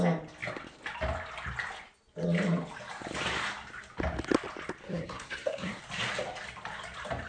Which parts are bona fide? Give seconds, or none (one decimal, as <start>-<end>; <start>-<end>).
0.0-4.8; 5.8-7.3